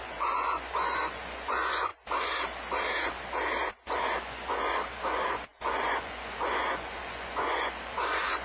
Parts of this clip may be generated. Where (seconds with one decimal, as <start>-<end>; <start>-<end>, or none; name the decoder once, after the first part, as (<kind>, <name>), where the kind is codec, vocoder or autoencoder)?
0.0-1.9 (vocoder, Vocos); 4.0-8.4